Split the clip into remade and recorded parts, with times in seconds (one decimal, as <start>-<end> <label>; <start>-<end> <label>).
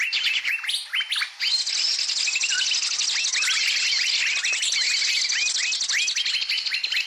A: 0.0-7.1 recorded